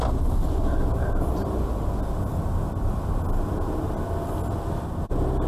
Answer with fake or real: real